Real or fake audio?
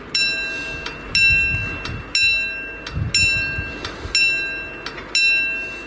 real